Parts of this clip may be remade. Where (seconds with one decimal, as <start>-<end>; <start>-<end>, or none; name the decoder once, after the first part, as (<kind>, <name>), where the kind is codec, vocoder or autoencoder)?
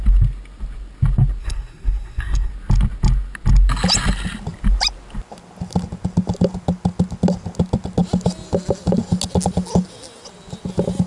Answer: 1.4-2.5 (codec, SNAC)